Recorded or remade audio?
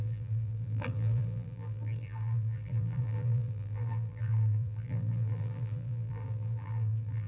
remade